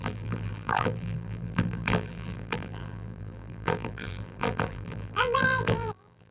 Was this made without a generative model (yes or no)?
no